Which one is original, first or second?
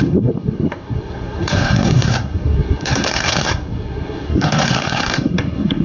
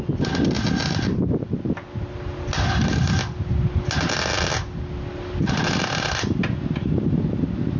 second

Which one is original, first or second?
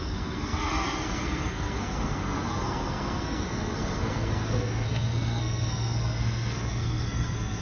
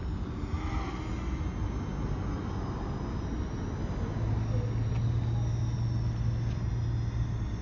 second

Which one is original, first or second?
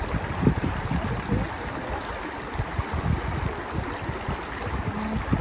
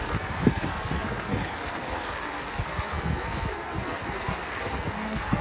first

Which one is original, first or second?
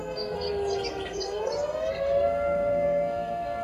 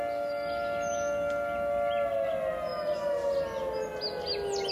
second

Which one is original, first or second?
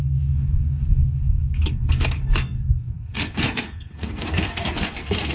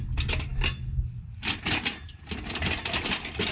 second